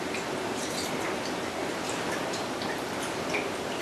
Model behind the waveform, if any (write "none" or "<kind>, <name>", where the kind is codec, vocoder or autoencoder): none